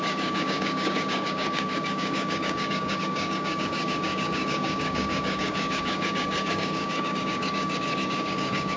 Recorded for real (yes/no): no